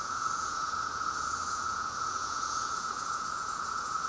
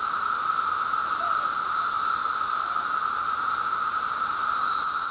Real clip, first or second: second